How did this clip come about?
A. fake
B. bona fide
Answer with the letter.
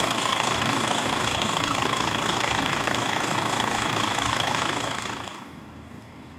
A